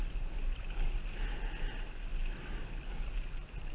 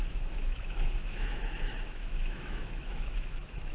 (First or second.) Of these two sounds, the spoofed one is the second